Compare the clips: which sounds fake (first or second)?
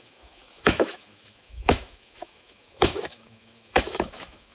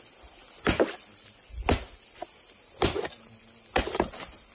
first